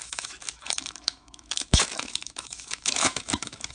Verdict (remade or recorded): remade